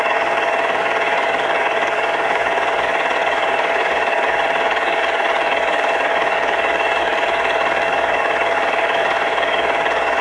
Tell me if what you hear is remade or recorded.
remade